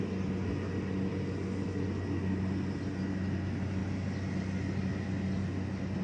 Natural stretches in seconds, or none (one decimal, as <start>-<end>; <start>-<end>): 0.0-6.0